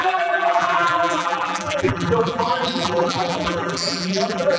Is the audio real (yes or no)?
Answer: no